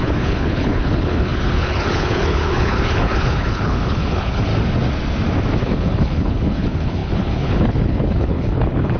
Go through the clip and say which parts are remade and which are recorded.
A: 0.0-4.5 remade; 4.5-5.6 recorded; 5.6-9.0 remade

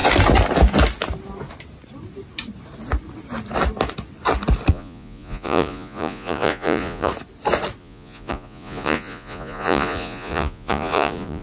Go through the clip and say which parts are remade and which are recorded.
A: 0.0-4.7 recorded; 4.7-7.1 remade; 7.1-7.8 recorded; 7.8-11.4 remade

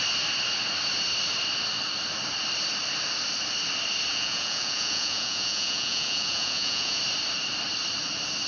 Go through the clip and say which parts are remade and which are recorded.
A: 0.0-4.1 recorded; 4.1-7.0 remade; 7.0-8.5 recorded

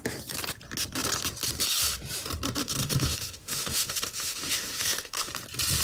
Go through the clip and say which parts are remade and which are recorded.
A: 0.0-2.6 recorded; 2.6-5.3 remade; 5.3-5.8 recorded